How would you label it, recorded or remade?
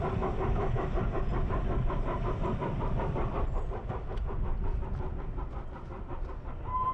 recorded